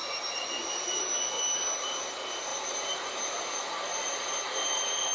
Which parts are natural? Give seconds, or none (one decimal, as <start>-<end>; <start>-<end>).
1.0-2.5